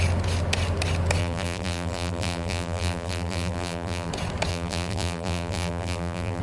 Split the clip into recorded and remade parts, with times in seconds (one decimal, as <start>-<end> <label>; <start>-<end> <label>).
0.0-1.2 recorded; 1.2-4.1 remade; 4.1-4.5 recorded; 4.5-6.4 remade